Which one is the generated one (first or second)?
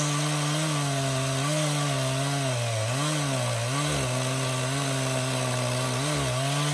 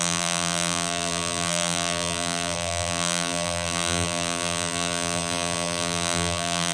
second